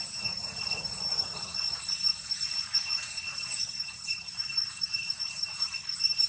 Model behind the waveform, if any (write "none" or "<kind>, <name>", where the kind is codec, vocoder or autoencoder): vocoder, Vocos